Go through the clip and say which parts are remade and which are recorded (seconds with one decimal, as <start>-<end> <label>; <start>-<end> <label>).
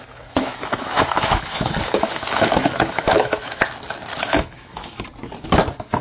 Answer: 0.0-3.6 remade; 3.6-4.1 recorded; 4.1-5.0 remade; 5.0-6.0 recorded